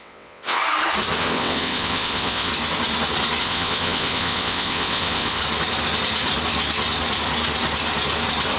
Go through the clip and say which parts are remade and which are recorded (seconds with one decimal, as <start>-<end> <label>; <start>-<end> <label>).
0.0-0.6 remade; 0.6-1.2 recorded; 1.2-2.5 remade; 2.5-3.4 recorded; 3.4-5.4 remade; 5.4-8.6 recorded